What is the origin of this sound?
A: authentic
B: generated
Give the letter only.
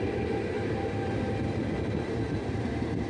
B